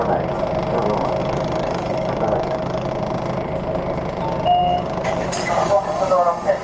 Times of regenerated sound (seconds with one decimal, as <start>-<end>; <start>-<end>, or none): 1.2-2.9; 4.6-5.8